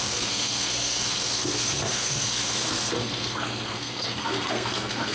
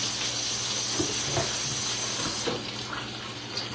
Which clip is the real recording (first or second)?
second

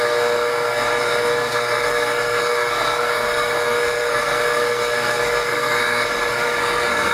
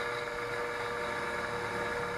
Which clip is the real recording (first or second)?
second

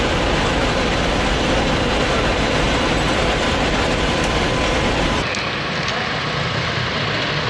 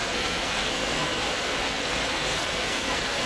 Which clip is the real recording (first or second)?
first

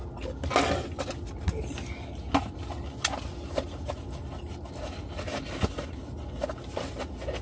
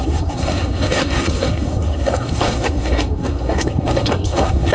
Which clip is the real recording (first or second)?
first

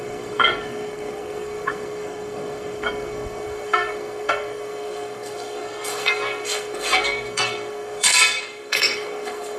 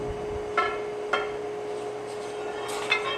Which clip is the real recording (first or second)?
second